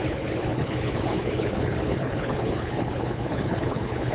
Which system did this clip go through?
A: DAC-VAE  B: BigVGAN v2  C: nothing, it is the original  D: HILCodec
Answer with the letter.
D